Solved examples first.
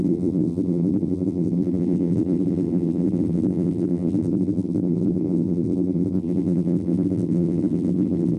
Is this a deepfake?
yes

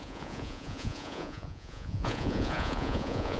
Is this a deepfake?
yes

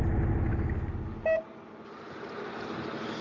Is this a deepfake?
no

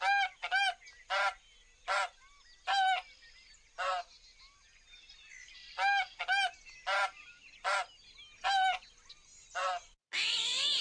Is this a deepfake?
no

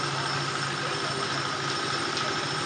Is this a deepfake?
no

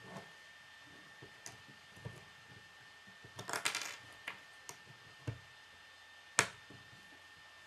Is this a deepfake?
no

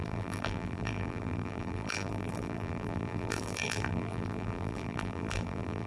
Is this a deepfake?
yes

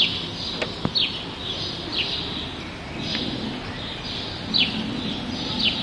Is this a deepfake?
no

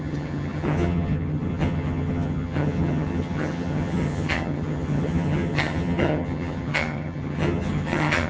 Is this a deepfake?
yes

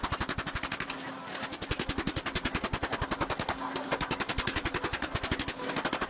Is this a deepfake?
no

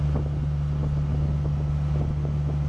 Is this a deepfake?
no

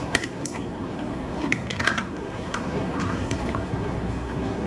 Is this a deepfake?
yes